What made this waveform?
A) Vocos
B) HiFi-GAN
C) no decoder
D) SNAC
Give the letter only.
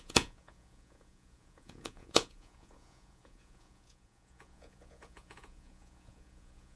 A